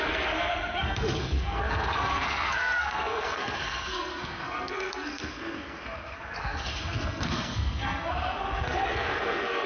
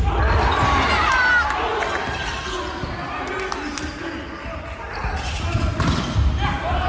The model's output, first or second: first